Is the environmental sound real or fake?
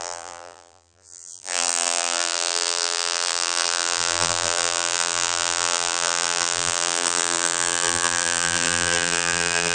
fake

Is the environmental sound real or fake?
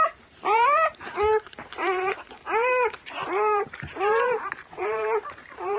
fake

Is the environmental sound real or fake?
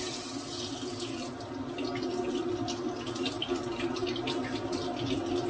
real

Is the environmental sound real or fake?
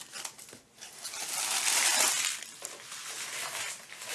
real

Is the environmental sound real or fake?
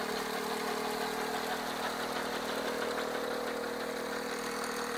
real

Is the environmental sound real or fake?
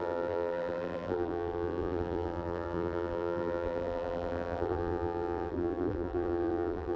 fake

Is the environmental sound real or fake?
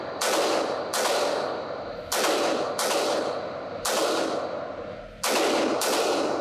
real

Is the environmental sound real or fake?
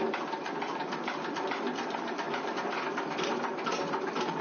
fake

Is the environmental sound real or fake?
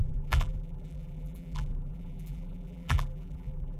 fake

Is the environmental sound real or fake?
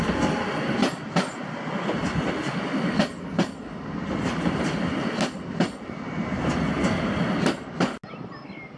real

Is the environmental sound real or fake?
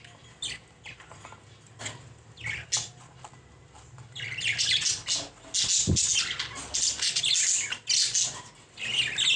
real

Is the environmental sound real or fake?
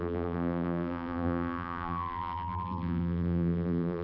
fake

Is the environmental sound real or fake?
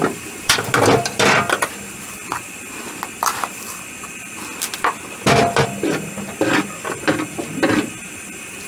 real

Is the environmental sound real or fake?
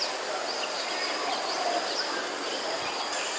fake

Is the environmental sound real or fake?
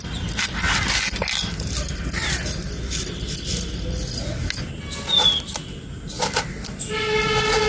real